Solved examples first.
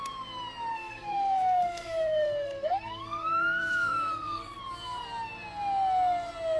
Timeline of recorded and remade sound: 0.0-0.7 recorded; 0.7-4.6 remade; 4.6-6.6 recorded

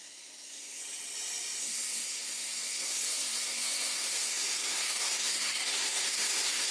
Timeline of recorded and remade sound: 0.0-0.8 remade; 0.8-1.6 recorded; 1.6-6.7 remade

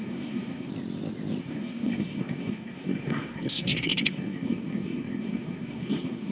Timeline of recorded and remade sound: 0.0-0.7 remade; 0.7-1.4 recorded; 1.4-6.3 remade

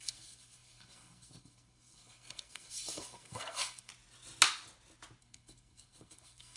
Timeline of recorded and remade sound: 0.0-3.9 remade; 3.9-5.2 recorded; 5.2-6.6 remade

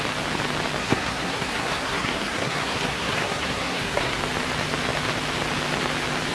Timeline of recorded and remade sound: 0.0-0.8 recorded; 0.8-4.2 remade; 4.2-6.3 recorded

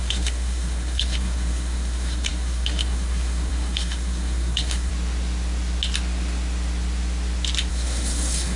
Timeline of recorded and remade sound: 0.0-4.9 remade; 4.9-7.7 recorded; 7.7-8.6 remade